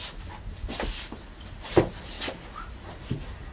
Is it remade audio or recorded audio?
recorded